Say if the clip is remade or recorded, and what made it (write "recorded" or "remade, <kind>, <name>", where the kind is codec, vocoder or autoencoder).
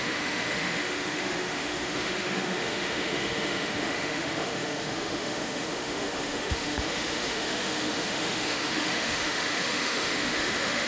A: remade, autoencoder, DAC-VAE